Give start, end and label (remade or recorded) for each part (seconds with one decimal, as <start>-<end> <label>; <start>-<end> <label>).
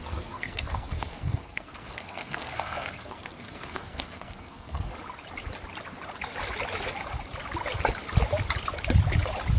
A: 0.0-4.9 remade; 4.9-9.6 recorded